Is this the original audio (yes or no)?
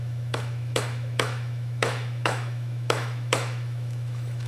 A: no